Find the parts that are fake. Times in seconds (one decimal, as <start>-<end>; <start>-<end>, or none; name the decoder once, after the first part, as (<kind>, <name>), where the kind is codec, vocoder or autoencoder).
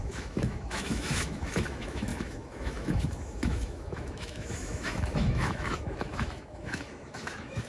0.0-7.7 (autoencoder, DAC-VAE)